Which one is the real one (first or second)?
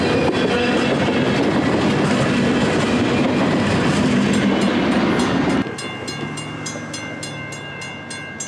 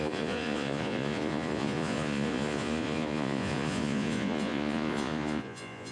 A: first